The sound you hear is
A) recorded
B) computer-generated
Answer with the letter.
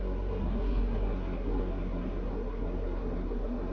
B